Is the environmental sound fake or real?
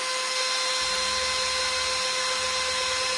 real